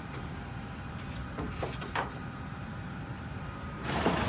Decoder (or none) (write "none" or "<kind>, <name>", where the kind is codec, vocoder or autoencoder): vocoder, BigVGAN v2